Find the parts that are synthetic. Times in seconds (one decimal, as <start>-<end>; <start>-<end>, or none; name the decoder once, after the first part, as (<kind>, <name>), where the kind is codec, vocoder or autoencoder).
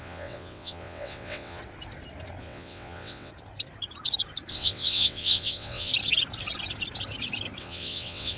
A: 0.0-1.6 (vocoder, WaveNeXt); 2.4-3.3; 4.5-5.9; 7.6-8.4